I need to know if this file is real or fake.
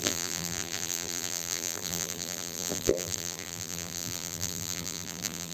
fake